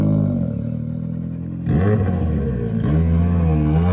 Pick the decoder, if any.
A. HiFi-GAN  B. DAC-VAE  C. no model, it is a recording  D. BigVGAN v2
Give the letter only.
C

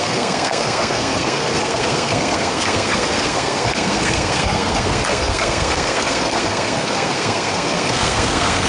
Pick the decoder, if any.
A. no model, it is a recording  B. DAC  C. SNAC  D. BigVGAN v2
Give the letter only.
C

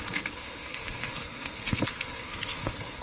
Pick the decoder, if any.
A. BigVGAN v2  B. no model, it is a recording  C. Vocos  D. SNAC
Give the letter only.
D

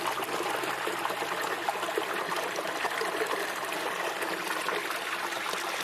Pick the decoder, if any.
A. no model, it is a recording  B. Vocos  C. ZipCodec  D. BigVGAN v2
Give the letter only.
A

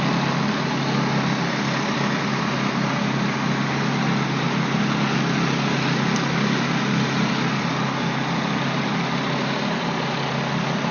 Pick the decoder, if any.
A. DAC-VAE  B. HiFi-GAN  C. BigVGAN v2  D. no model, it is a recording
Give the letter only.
D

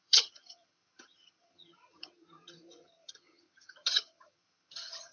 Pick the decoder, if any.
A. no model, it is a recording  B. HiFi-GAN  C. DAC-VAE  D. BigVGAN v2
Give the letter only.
B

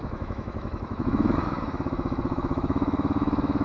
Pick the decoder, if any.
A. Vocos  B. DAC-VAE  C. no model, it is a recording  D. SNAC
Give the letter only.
B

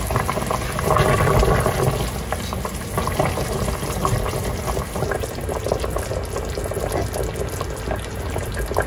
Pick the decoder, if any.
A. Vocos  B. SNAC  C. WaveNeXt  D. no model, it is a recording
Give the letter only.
D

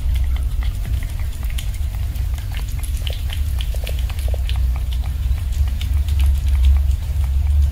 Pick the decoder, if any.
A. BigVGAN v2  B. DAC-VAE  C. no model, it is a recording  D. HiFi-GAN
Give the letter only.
A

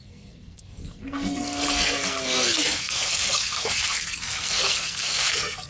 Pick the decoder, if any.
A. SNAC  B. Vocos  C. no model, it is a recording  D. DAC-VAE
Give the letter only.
A